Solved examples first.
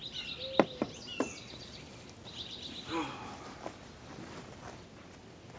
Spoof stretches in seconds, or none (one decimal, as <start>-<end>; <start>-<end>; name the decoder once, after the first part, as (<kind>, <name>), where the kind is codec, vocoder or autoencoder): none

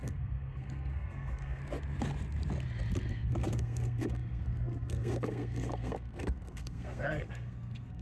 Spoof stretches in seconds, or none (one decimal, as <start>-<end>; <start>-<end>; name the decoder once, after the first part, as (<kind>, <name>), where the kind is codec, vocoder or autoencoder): 0.0-1.6 (codec, SNAC); 3.1-8.0

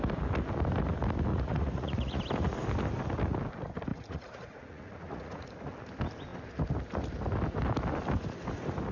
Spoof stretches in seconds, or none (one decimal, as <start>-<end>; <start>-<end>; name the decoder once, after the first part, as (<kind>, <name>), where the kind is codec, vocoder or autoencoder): 1.3-2.2 (vocoder, Vocos); 3.9-5.7

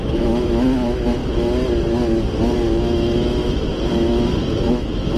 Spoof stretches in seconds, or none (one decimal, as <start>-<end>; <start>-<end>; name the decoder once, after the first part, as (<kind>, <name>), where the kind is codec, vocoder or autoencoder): 0.0-1.2 (autoencoder, DAC-VAE); 2.8-3.7; 4.7-5.2